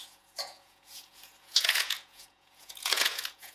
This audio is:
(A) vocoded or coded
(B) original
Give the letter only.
A